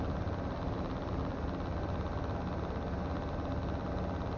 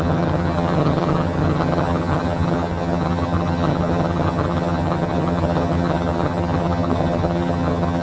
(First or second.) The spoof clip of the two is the second